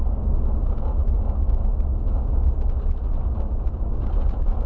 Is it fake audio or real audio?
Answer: real